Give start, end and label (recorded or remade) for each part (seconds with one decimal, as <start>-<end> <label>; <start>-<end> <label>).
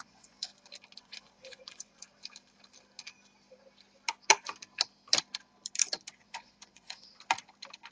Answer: 0.0-0.5 remade; 0.5-1.0 recorded; 1.0-2.0 remade; 2.0-6.2 recorded; 6.2-7.1 remade; 7.1-7.9 recorded